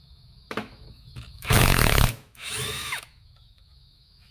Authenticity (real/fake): fake